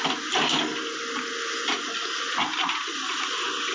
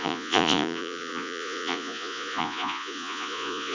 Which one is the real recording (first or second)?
first